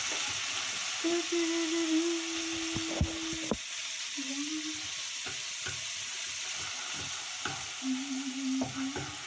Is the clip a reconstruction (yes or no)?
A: no